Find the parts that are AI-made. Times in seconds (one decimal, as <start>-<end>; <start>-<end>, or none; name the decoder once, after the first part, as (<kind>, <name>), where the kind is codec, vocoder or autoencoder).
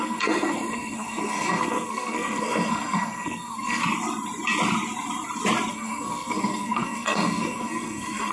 0.0-3.8 (codec, SNAC); 5.7-8.3